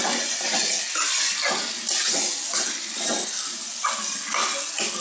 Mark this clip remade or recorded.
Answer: recorded